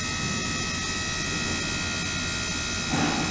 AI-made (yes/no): no